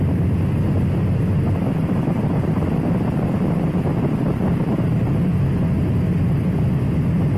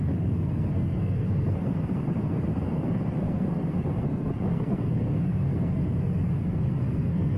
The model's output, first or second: second